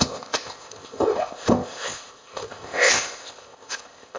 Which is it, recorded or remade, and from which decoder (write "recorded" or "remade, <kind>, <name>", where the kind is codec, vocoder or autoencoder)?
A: remade, codec, ZipCodec